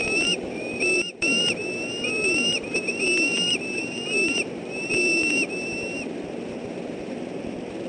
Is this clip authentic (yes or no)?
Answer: no